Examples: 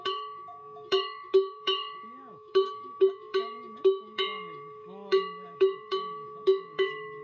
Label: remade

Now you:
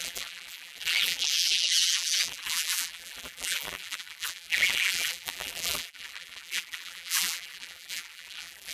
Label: remade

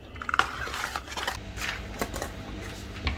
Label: recorded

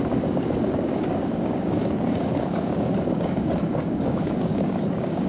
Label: remade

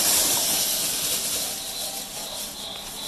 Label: recorded